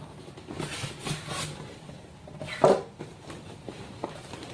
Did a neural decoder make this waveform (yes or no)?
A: no